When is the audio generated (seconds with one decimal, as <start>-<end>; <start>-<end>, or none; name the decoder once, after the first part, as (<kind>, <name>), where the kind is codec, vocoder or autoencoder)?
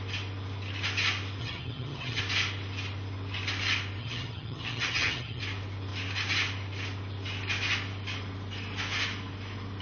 1.4-2.2 (vocoder, HiFi-GAN); 4.0-5.4